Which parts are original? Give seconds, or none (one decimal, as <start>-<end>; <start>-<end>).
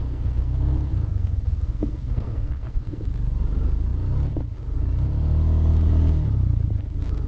3.1-7.3